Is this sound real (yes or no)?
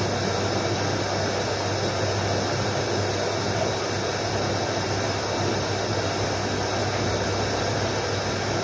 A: yes